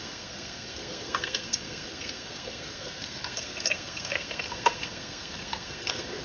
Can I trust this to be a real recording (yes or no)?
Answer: no